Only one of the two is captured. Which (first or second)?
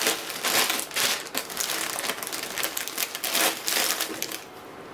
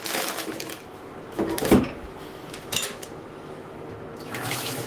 first